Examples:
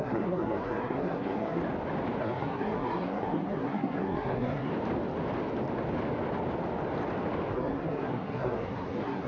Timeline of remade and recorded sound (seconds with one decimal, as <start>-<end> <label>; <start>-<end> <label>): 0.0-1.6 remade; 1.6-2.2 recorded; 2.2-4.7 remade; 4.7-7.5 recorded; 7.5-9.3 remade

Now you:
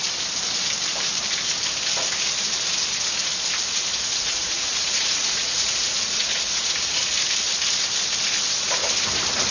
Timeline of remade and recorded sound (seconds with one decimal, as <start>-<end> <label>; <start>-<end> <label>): 0.0-3.9 recorded; 3.9-7.0 remade; 7.0-9.5 recorded

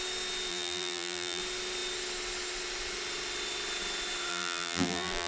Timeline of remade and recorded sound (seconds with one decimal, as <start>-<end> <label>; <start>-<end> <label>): 0.0-0.5 recorded; 0.5-1.4 remade; 1.4-4.3 recorded; 4.3-5.3 remade